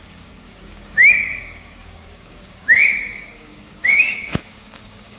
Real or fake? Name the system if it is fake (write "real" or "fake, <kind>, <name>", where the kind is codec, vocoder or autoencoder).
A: fake, codec, DAC